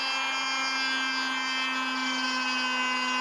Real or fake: real